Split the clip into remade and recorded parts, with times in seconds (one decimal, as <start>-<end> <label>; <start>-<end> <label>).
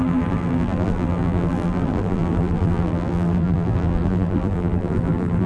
0.0-5.5 remade